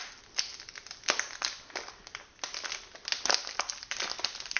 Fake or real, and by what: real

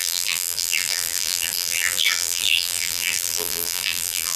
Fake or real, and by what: fake, vocoder, BigVGAN v2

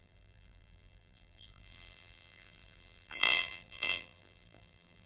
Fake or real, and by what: fake, vocoder, BigVGAN v2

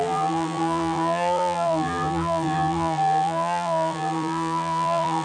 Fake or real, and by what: fake, vocoder, BigVGAN v2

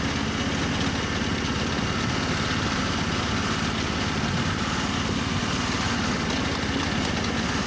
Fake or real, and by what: real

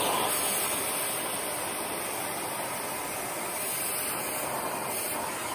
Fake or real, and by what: fake, vocoder, BigVGAN v2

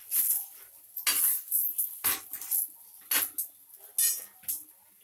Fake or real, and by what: real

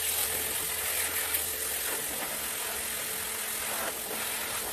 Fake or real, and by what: real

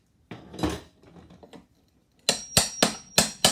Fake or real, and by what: real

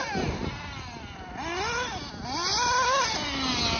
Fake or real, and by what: real